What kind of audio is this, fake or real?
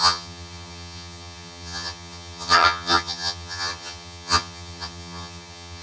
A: fake